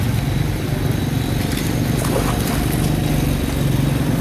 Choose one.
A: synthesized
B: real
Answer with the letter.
B